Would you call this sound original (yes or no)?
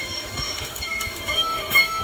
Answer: no